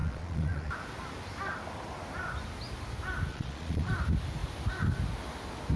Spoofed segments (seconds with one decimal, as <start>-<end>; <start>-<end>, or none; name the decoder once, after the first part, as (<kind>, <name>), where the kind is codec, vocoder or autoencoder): 0.0-0.7 (vocoder, Vocos); 3.3-3.9